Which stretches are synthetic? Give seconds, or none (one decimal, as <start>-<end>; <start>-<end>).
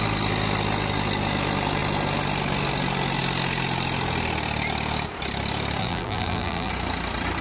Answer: 5.8-6.7